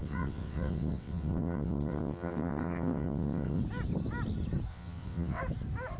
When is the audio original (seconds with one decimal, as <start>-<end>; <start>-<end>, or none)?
3.6-4.7; 5.4-6.0